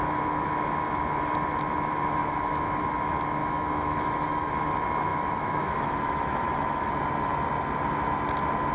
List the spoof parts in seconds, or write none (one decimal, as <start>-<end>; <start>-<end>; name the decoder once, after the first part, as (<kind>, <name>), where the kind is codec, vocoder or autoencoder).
2.2-2.8 (autoencoder, DAC-VAE); 3.4-4.5; 5.1-6.9